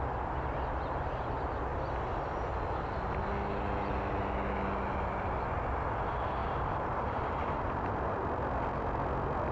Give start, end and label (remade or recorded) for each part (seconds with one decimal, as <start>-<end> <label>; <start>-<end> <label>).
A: 0.0-6.4 recorded; 6.4-8.2 remade; 8.2-9.5 recorded